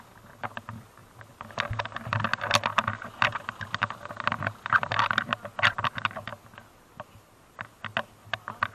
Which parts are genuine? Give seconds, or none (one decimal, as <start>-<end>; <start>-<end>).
0.0-8.7